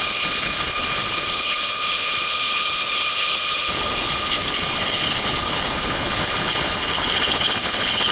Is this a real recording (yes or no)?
no